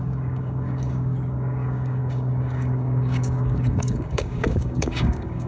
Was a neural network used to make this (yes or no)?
yes